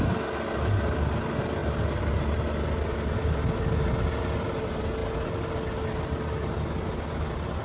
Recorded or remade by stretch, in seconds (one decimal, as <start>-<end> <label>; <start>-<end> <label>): 0.0-7.6 recorded